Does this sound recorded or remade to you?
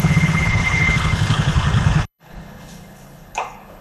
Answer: remade